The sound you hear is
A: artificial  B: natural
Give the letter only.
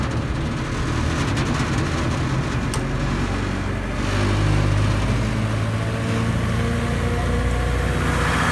B